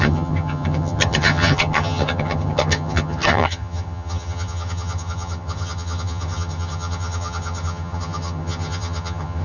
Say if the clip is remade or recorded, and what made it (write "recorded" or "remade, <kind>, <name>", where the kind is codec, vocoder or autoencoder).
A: remade, vocoder, HiFi-GAN